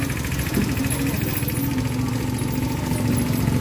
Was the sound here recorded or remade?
recorded